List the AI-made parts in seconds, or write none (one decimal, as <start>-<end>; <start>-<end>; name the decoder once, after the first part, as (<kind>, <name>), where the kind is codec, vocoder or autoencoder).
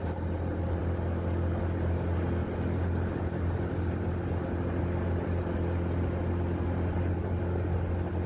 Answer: none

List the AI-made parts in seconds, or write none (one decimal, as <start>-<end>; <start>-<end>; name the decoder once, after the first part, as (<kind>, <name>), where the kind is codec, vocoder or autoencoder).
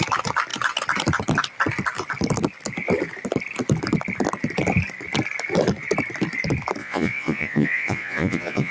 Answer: 6.8-8.7 (vocoder, Vocos)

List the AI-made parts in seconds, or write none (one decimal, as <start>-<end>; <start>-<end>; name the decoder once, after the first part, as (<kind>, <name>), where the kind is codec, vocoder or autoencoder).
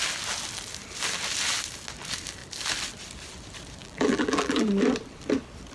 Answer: 3.8-4.7 (vocoder, BigVGAN v2)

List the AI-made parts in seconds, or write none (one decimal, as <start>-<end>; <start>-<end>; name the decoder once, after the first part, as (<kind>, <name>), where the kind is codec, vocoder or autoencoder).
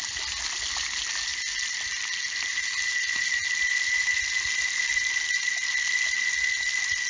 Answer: none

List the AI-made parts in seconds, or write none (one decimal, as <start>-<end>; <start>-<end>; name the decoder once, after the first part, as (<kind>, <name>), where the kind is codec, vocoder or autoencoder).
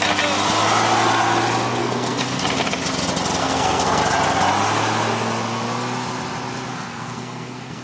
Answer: 1.8-2.4 (codec, SNAC); 3.4-4.0; 6.7-7.8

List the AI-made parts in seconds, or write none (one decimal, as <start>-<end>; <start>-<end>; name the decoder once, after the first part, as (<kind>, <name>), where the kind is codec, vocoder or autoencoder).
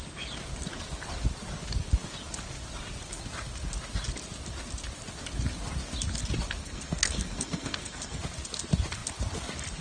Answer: 6.6-8.2 (codec, SNAC)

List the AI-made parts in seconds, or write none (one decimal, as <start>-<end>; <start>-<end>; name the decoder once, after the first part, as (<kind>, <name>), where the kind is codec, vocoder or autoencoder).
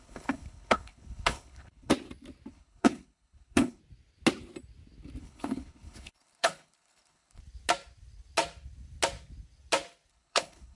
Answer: 0.0-1.9 (codec, HILCodec); 2.5-3.8; 5.2-7.4; 10.1-10.8